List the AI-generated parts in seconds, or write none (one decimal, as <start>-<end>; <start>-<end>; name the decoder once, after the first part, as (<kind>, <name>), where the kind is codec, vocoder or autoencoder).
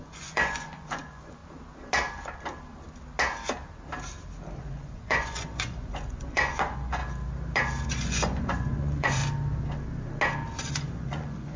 0.0-1.4 (vocoder, Vocos); 4.6-7.0; 7.9-9.2; 10.7-11.6